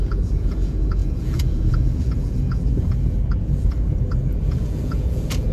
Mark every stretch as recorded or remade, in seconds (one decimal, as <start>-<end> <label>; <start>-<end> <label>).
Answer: 0.0-5.5 remade